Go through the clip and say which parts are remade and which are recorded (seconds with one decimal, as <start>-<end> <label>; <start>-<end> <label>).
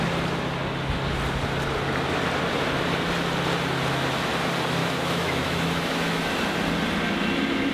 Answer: 0.0-4.8 recorded; 4.8-6.3 remade; 6.3-7.7 recorded